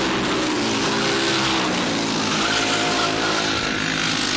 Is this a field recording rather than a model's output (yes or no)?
yes